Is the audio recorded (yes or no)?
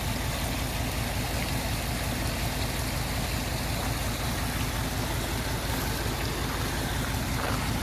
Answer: yes